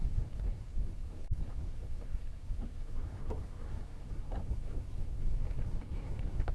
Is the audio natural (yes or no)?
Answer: no